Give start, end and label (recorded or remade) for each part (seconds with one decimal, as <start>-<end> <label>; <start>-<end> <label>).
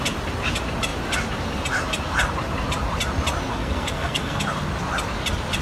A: 0.0-3.5 recorded; 3.5-4.4 remade; 4.4-5.6 recorded